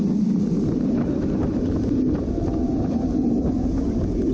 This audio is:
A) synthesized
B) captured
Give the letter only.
B